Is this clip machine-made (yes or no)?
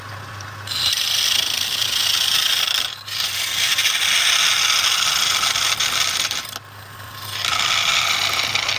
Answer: no